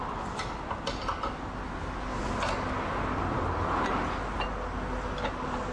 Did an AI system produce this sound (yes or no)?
no